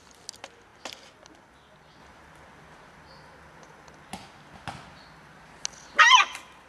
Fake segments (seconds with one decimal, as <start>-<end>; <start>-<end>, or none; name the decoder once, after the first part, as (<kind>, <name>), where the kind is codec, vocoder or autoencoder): none